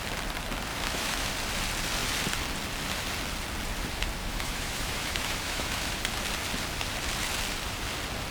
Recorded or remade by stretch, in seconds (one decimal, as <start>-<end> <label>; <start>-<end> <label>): 0.0-0.7 recorded; 0.7-1.3 remade; 1.3-4.2 recorded; 4.2-6.0 remade; 6.0-8.3 recorded